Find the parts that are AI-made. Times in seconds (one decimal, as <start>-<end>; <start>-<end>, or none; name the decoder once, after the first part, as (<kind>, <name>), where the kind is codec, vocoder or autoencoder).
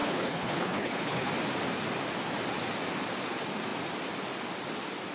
0.0-1.3 (codec, HILCodec)